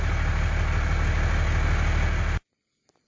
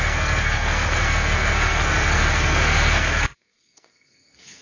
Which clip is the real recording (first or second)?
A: first